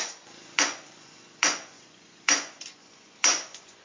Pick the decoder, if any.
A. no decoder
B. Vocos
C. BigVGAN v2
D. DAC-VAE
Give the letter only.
B